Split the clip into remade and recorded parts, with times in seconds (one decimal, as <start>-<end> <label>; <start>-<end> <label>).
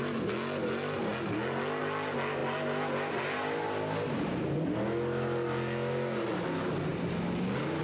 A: 0.0-7.8 recorded